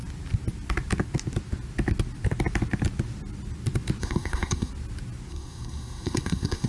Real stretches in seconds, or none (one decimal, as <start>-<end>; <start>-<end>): 0.0-4.0; 4.7-5.3